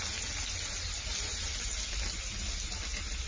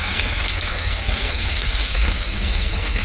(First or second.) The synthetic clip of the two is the second